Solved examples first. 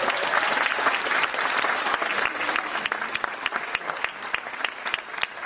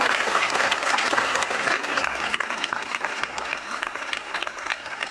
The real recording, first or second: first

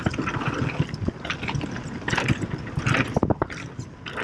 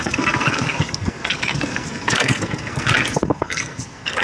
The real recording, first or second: first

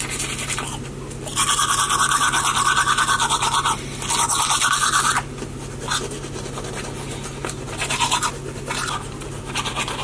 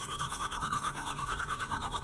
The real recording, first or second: first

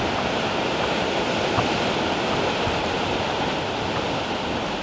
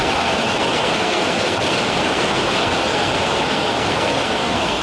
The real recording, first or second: first